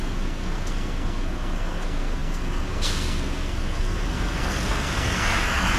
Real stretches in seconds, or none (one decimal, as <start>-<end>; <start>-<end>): none